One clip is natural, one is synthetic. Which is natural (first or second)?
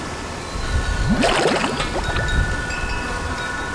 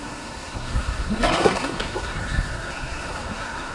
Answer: first